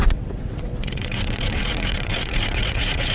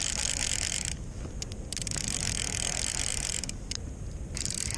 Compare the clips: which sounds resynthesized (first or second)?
first